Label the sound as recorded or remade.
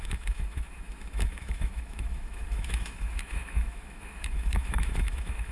remade